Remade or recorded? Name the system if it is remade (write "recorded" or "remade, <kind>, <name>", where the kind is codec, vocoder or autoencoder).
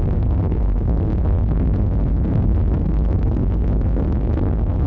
remade, codec, SNAC